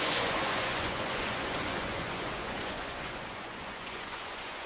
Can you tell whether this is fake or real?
fake